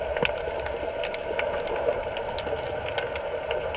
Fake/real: real